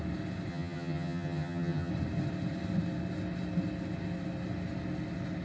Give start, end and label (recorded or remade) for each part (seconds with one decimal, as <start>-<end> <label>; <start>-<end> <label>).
0.0-0.5 recorded; 0.5-1.9 remade; 1.9-5.4 recorded